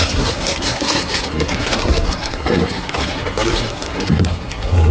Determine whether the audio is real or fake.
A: fake